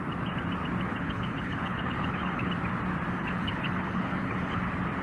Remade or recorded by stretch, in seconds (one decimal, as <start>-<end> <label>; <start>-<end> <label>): 0.0-0.9 recorded; 0.9-2.5 remade; 2.5-3.2 recorded; 3.2-4.6 remade; 4.6-5.0 recorded